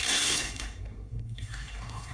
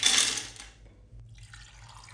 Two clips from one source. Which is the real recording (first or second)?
second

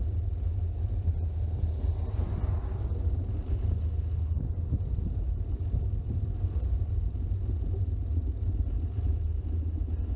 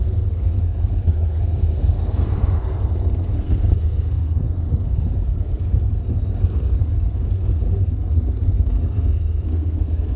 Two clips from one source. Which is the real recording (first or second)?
first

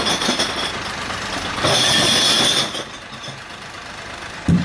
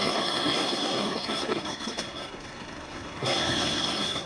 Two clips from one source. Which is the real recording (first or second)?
first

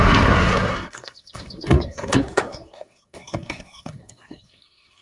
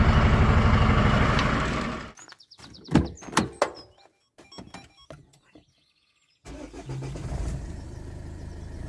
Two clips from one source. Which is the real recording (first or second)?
second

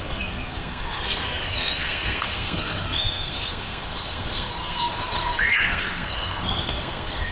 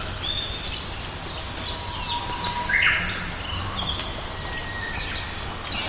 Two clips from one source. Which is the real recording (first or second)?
second